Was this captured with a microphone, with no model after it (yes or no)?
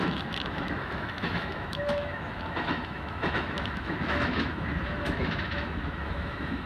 no